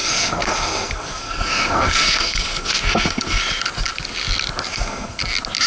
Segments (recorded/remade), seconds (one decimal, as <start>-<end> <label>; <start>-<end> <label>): 0.0-3.4 remade; 3.4-4.7 recorded; 4.7-5.2 remade; 5.2-5.7 recorded